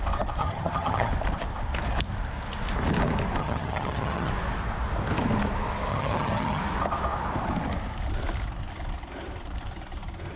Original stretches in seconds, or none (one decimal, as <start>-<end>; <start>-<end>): 0.0-0.4; 1.1-3.4; 4.3-5.9; 6.6-10.4